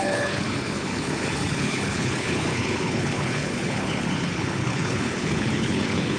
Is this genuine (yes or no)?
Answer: no